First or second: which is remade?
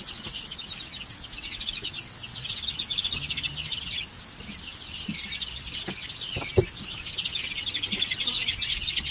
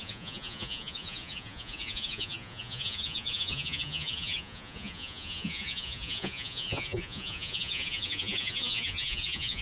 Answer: second